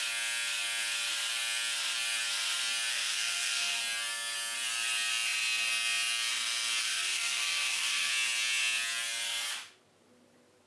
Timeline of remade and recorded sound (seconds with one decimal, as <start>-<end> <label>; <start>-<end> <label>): 0.0-2.9 recorded; 2.9-3.8 remade; 3.8-6.8 recorded; 6.8-8.1 remade; 8.1-10.7 recorded

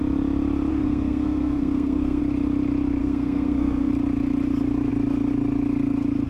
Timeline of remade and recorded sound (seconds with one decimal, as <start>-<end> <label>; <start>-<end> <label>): 0.0-0.7 recorded; 0.7-2.2 remade; 2.2-3.0 recorded; 3.0-3.9 remade; 3.9-6.3 recorded

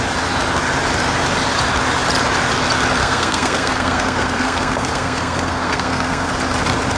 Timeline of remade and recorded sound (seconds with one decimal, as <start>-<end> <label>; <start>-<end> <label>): 0.0-3.0 recorded; 3.0-6.3 remade; 6.3-7.0 recorded

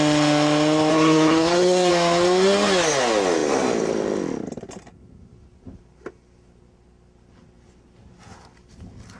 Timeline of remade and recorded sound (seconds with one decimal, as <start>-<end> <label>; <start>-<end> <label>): 0.0-0.9 recorded; 0.9-1.9 remade; 1.9-9.2 recorded

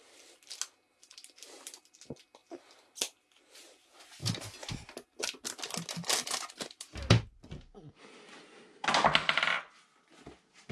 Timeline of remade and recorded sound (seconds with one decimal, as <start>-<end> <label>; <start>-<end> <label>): 0.0-10.7 recorded

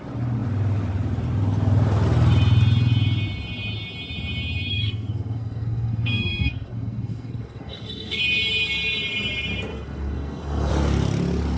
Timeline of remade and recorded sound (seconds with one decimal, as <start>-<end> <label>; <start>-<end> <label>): 0.0-4.7 recorded; 4.7-8.2 remade; 8.2-9.7 recorded; 9.7-10.7 remade; 10.7-11.6 recorded

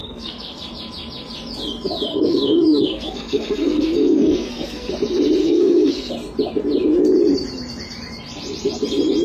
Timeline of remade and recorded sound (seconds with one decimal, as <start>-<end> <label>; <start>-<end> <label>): 0.0-0.6 remade; 0.6-2.1 recorded; 2.1-4.9 remade; 4.9-5.4 recorded; 5.4-6.1 remade; 6.1-9.2 recorded

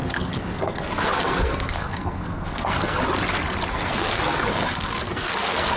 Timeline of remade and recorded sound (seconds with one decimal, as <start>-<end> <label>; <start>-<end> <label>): 0.0-3.0 remade; 3.0-3.7 recorded; 3.7-5.8 remade